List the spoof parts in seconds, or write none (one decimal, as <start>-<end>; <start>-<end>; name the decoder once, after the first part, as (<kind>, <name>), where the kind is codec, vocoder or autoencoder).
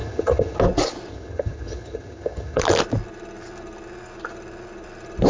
0.0-0.6 (vocoder, HiFi-GAN); 1.1-2.6